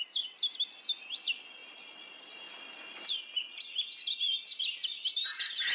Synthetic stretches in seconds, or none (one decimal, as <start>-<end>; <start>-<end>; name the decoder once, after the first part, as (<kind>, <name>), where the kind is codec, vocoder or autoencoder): none